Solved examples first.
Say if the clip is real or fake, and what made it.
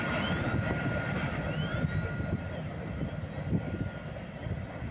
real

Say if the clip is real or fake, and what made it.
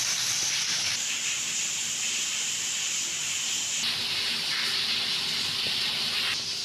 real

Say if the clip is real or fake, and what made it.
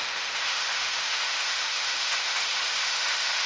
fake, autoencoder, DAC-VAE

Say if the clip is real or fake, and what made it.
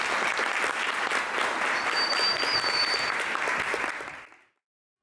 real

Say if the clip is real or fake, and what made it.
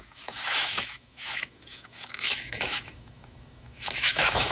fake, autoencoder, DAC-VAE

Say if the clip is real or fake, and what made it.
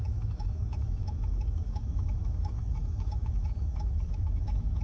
fake, autoencoder, DAC-VAE